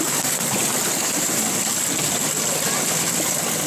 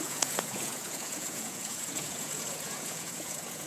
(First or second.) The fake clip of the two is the second